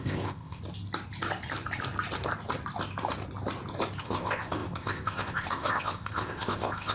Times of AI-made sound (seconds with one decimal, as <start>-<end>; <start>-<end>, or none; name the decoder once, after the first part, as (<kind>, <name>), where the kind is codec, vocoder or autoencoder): 0.0-0.6 (codec, ZipCodec); 4.0-6.9